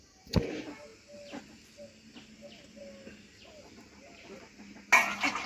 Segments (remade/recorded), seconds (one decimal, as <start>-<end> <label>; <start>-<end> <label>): 0.0-5.5 recorded